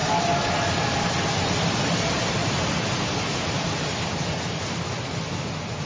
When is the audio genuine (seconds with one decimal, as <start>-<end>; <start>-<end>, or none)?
0.0-5.9